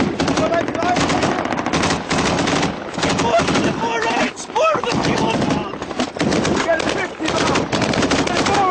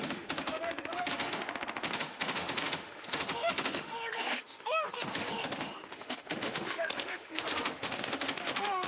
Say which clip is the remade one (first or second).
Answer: second